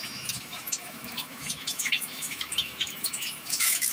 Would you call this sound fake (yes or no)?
yes